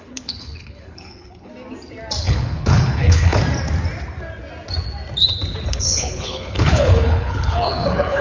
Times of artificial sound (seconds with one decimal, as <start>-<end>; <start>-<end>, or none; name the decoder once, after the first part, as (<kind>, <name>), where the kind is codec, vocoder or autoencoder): 0.0-1.5 (codec, HILCodec); 2.2-3.4; 5.7-8.2